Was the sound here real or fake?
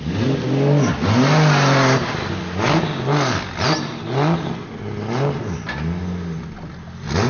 real